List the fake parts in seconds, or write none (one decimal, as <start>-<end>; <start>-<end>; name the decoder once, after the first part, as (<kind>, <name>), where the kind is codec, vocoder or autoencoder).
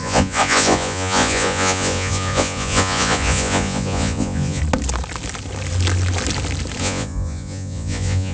0.0-4.6 (vocoder, Vocos); 6.8-8.3